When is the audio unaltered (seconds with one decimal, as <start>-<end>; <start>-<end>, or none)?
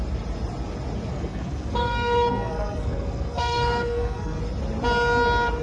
0.0-1.1; 4.4-5.6